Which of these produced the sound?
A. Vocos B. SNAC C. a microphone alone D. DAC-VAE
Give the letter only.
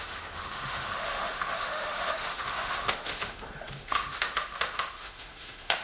D